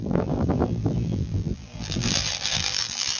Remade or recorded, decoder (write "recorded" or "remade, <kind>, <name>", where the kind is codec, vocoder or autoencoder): remade, vocoder, BigVGAN v2